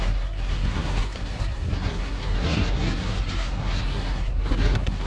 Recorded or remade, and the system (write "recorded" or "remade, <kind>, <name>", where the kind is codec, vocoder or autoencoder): remade, codec, SNAC